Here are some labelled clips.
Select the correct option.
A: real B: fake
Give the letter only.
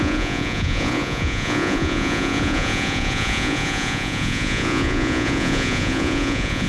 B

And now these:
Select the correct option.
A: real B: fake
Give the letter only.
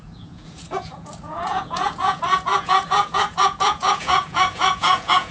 B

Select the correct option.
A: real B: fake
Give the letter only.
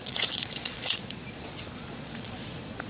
B